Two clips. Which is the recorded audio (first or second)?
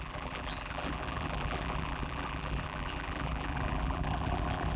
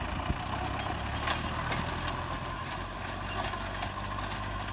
second